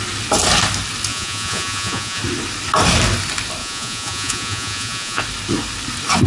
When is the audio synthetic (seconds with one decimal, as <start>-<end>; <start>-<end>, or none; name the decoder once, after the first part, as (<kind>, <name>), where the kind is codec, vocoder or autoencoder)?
1.1-2.2 (vocoder, Vocos); 3.6-5.2